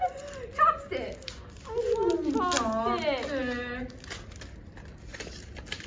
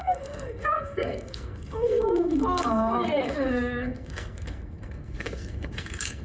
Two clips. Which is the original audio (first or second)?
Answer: first